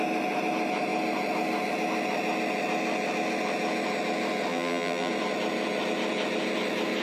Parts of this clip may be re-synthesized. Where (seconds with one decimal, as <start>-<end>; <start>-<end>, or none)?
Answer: 4.5-5.1